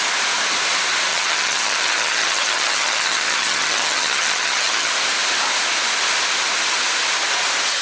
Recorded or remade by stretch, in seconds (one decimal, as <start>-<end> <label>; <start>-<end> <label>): 0.0-1.1 recorded; 1.1-4.9 remade; 4.9-7.8 recorded